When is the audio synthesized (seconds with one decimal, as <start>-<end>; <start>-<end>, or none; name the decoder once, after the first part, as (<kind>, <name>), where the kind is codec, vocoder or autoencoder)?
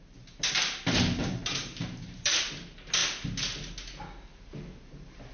1.2-2.4 (vocoder, BigVGAN v2)